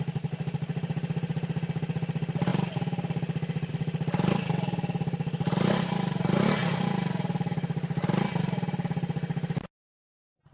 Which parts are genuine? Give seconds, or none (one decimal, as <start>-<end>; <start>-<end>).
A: 0.0-10.5